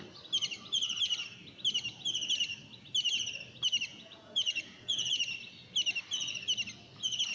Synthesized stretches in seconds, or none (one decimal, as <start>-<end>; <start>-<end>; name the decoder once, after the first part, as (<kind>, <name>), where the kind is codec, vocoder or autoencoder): 3.9-5.2 (vocoder, Vocos)